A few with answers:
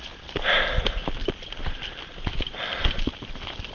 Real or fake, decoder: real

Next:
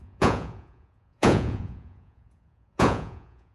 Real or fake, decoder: fake, vocoder, Vocos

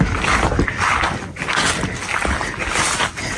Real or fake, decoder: real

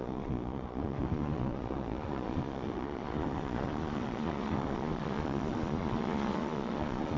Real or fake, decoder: fake, vocoder, Vocos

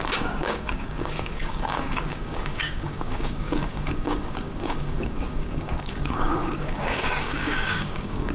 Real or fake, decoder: fake, codec, DAC